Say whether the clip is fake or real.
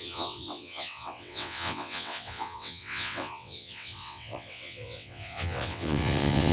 fake